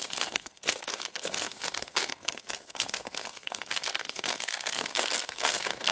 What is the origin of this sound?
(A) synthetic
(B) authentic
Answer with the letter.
A